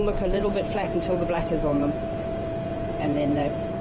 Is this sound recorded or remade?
remade